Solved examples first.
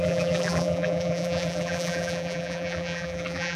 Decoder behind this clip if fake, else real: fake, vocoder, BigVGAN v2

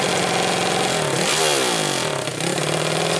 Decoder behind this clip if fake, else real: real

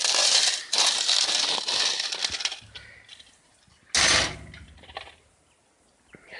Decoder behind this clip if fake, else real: real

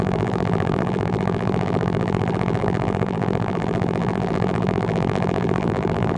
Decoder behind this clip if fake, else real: fake, vocoder, BigVGAN v2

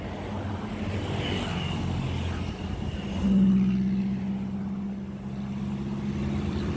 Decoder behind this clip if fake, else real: real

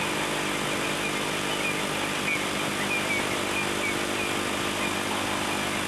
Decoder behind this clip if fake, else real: real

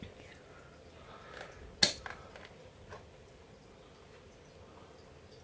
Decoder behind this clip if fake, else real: real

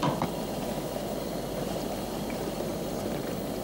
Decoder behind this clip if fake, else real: fake, vocoder, BigVGAN v2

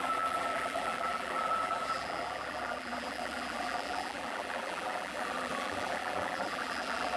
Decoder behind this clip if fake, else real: fake, vocoder, BigVGAN v2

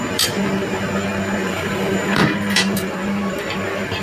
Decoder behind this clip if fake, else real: fake, vocoder, BigVGAN v2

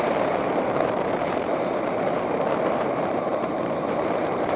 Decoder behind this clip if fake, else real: fake, vocoder, BigVGAN v2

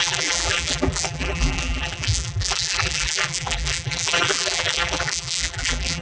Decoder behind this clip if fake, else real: fake, vocoder, BigVGAN v2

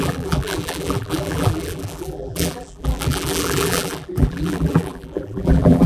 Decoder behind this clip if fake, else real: fake, vocoder, BigVGAN v2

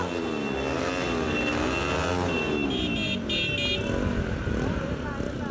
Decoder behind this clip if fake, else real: real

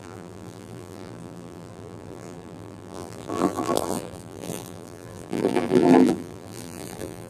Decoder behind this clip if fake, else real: fake, vocoder, BigVGAN v2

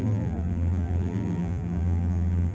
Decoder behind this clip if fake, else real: fake, vocoder, BigVGAN v2